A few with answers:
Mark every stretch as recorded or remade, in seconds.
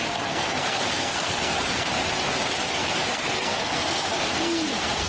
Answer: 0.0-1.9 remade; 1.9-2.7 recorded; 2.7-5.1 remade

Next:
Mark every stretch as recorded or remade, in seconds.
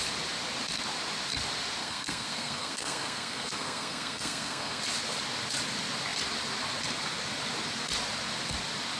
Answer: 0.0-1.8 recorded; 1.8-4.8 remade; 4.8-9.0 recorded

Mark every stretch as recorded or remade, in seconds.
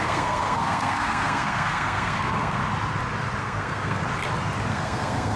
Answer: 0.0-2.6 remade; 2.6-3.4 recorded; 3.4-4.0 remade; 4.0-4.7 recorded; 4.7-5.4 remade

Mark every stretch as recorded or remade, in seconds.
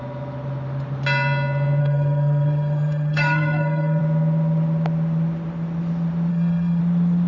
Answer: 0.0-1.8 recorded; 1.8-4.0 remade; 4.0-6.3 recorded; 6.3-6.8 remade; 6.8-7.3 recorded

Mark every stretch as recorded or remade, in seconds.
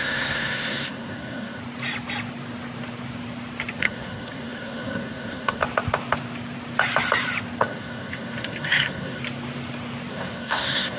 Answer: 0.0-1.6 remade; 1.6-3.8 recorded; 3.8-5.6 remade; 5.6-7.6 recorded; 7.6-9.2 remade; 9.2-10.1 recorded; 10.1-11.0 remade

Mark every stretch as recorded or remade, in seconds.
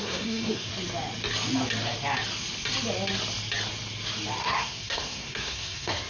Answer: 0.0-0.7 remade; 0.7-4.4 recorded; 4.4-6.1 remade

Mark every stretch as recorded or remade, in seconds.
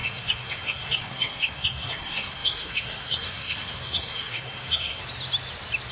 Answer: 0.0-5.0 remade; 5.0-5.9 recorded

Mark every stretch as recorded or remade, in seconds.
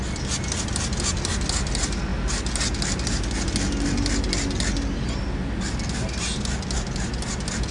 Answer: 0.0-7.7 recorded